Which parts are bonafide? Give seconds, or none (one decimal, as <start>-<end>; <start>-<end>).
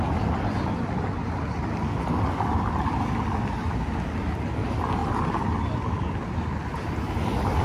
0.0-7.6